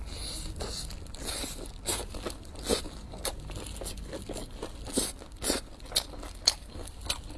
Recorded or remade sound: recorded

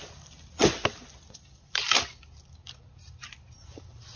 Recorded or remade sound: recorded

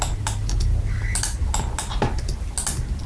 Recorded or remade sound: recorded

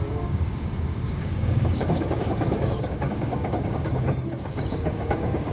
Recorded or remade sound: remade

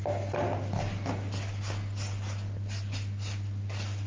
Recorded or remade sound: recorded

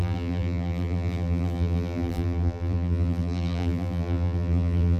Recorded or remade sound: remade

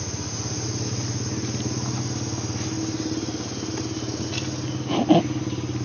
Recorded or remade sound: recorded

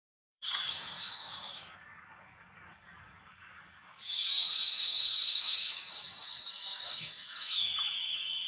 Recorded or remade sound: remade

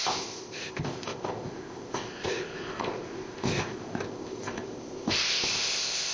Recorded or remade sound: remade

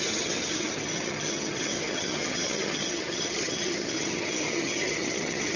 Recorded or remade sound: remade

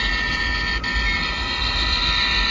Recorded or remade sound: recorded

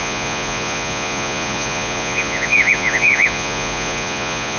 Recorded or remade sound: remade